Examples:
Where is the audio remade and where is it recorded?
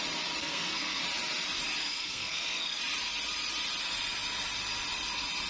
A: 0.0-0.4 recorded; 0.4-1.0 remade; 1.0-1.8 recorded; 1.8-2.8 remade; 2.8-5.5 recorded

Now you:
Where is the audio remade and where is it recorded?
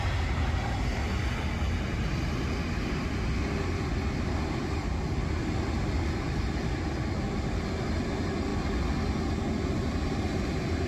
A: 0.0-10.9 recorded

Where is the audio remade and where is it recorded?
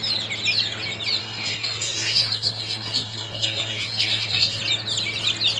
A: 0.0-1.2 recorded; 1.2-4.6 remade; 4.6-5.6 recorded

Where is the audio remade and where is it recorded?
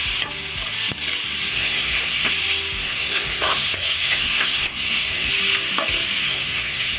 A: 0.0-1.5 recorded; 1.5-2.3 remade; 2.3-2.8 recorded; 2.8-5.3 remade; 5.3-6.2 recorded; 6.2-7.0 remade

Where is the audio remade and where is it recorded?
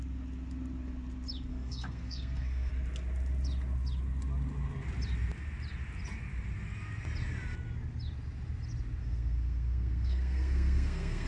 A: 0.0-1.5 recorded; 1.5-2.7 remade; 2.7-9.0 recorded; 9.0-11.3 remade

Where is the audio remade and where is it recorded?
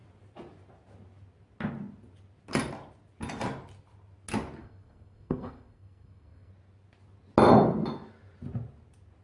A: 0.0-4.6 recorded; 4.6-6.5 remade; 6.5-9.2 recorded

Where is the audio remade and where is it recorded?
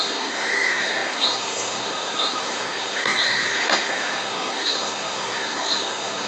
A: 0.0-6.3 remade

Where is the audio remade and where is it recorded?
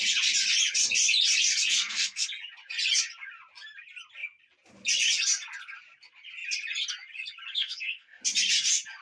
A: 0.0-1.7 recorded; 1.7-2.3 remade; 2.3-7.5 recorded; 7.5-8.2 remade; 8.2-9.0 recorded